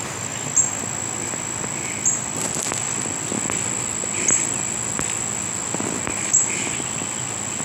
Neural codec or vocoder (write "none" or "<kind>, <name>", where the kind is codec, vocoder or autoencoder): none